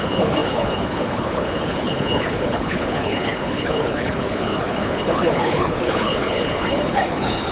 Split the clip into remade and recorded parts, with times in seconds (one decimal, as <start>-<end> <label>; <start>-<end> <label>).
0.0-7.5 remade